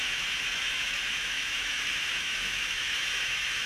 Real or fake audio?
fake